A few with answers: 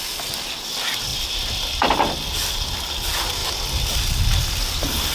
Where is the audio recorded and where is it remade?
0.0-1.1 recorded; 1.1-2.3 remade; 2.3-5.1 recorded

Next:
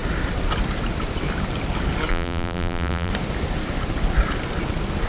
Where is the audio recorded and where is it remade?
0.0-2.1 recorded; 2.1-3.1 remade; 3.1-5.1 recorded

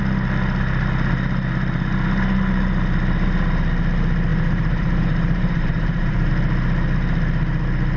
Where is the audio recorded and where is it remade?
0.0-4.3 recorded; 4.3-6.3 remade; 6.3-8.0 recorded

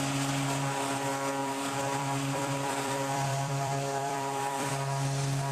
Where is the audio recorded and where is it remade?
0.0-1.4 recorded; 1.4-4.7 remade; 4.7-5.5 recorded

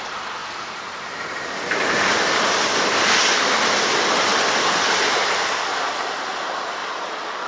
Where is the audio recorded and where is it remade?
0.0-0.4 recorded; 0.4-1.3 remade; 1.3-6.8 recorded; 6.8-7.5 remade